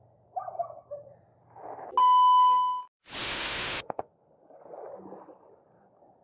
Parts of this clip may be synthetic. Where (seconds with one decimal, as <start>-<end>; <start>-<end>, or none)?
2.0-2.8; 3.2-4.1